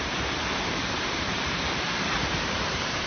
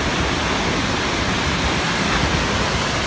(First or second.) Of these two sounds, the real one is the second